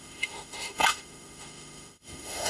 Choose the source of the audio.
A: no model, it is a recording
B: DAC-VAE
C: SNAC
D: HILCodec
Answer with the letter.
B